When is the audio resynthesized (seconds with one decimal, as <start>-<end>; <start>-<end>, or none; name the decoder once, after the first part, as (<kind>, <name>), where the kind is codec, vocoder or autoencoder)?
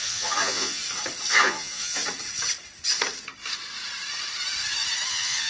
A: 0.0-0.8 (vocoder, Vocos); 1.3-2.0; 5.1-5.5